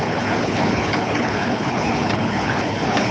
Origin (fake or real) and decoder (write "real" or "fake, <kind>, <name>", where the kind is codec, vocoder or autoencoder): fake, codec, HILCodec